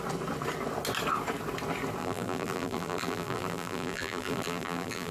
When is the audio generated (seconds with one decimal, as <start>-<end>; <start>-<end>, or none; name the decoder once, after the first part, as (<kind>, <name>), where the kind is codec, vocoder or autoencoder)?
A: 2.0-5.1 (vocoder, BigVGAN v2)

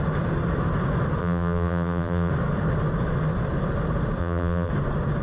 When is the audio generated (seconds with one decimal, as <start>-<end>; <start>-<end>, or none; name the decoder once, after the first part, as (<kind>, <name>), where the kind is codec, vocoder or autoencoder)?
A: 1.2-2.3 (vocoder, BigVGAN v2); 4.2-4.7

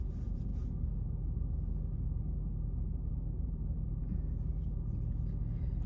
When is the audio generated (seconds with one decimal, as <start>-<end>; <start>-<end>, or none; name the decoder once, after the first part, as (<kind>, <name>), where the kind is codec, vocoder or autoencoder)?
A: 0.0-0.5 (vocoder, BigVGAN v2); 3.1-4.0; 4.6-5.9

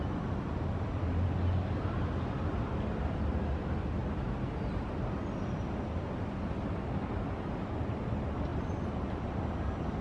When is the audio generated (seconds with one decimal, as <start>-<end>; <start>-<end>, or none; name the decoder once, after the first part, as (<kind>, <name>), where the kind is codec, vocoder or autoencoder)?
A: 8.5-9.6 (vocoder, BigVGAN v2)

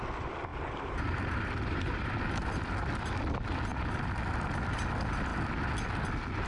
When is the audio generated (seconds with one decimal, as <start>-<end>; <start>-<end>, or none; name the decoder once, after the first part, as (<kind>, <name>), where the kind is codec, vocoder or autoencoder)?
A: 0.5-2.1 (vocoder, BigVGAN v2)

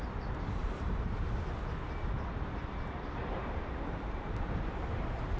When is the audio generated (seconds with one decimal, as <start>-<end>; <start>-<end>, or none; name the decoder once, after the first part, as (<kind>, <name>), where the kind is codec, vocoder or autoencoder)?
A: 0.6-1.3 (vocoder, BigVGAN v2); 3.4-5.4